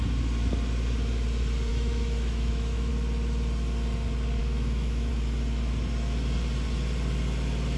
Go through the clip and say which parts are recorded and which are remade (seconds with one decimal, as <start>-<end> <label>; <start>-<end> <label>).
0.0-1.7 recorded; 1.7-2.9 remade; 2.9-4.4 recorded; 4.4-5.1 remade; 5.1-7.8 recorded